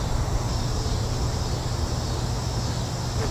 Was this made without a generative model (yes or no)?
yes